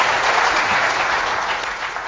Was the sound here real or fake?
fake